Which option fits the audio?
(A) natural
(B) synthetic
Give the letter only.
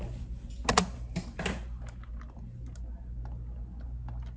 A